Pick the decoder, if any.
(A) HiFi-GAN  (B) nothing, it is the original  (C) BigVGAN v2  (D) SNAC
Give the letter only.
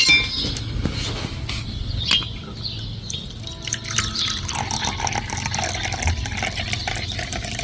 B